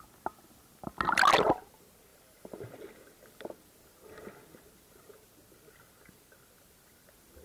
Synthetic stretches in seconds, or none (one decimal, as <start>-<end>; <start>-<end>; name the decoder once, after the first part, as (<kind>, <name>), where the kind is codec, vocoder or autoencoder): 2.1-2.7 (vocoder, BigVGAN v2)